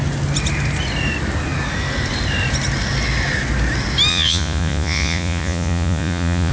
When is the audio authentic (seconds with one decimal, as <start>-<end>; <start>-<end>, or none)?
0.0-4.1

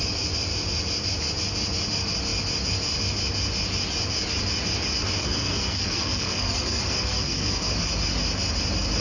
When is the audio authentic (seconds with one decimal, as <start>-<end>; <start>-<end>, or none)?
0.0-5.2; 7.7-9.0

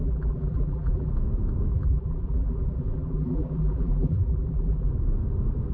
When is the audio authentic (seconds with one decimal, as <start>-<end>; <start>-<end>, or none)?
1.1-1.7; 4.9-5.7

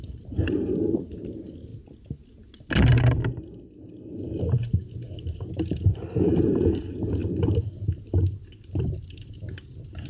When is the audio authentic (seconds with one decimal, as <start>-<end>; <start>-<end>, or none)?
1.7-4.1

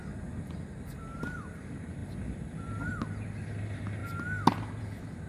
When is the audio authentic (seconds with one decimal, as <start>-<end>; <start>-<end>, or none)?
0.0-5.3